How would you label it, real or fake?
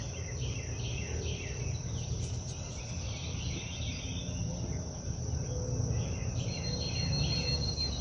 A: real